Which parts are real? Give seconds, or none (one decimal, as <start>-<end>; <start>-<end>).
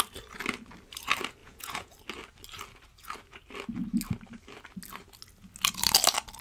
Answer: 0.0-1.4; 1.9-6.4